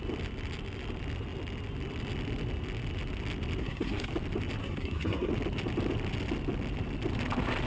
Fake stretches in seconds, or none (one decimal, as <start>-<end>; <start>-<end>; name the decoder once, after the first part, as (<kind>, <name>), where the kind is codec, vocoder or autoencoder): 3.6-4.1 (codec, SNAC); 4.6-5.3